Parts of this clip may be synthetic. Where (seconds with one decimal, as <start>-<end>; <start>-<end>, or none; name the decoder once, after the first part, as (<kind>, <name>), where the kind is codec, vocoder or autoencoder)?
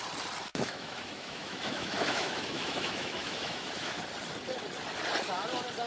0.5-4.0 (autoencoder, DAC-VAE)